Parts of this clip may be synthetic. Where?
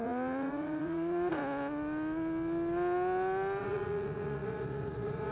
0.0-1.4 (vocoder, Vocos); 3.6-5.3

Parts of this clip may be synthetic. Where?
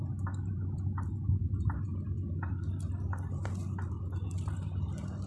none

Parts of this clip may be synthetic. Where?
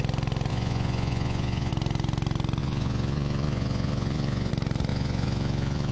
0.5-1.7 (vocoder, Vocos); 2.6-4.5; 4.9-5.9